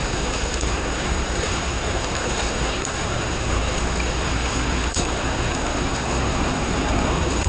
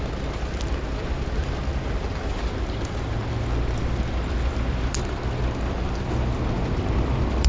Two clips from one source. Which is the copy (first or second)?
first